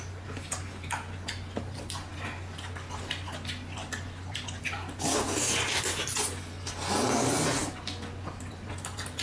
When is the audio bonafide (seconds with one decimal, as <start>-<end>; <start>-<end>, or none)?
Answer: 0.0-9.2